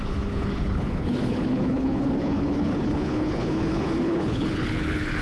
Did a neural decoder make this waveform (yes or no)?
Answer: yes